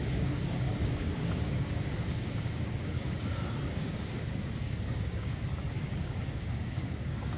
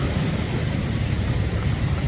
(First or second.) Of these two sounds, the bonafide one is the second